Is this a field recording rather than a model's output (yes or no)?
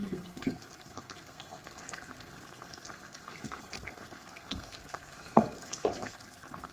no